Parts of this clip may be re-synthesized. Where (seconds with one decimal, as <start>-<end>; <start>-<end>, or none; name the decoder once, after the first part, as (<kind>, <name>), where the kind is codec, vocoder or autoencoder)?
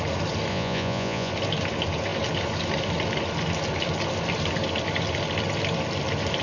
0.5-1.3 (vocoder, Vocos)